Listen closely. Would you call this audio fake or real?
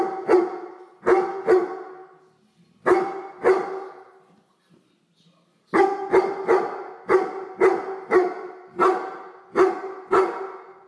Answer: real